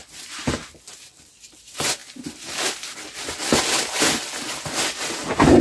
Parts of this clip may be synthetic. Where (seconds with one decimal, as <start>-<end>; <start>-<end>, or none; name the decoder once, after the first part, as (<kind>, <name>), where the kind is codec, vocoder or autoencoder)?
none